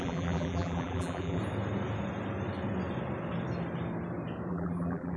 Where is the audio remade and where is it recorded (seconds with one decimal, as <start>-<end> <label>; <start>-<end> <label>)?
0.0-1.4 remade; 1.4-4.5 recorded; 4.5-5.2 remade

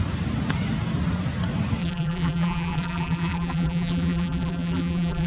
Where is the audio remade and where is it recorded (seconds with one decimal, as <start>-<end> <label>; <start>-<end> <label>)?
0.0-1.8 recorded; 1.8-5.3 remade